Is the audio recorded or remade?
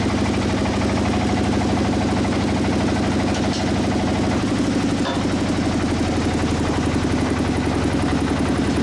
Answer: recorded